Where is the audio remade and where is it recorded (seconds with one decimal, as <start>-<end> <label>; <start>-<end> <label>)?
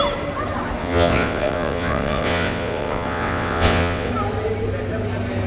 0.0-0.8 recorded; 0.8-4.1 remade; 4.1-5.5 recorded